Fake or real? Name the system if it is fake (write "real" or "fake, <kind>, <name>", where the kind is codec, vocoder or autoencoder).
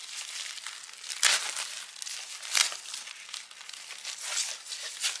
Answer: real